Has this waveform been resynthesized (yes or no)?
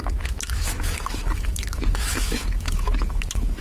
yes